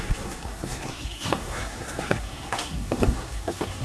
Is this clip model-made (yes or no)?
yes